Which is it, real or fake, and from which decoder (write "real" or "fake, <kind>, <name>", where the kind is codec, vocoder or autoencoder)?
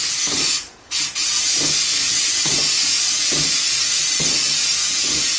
fake, vocoder, Vocos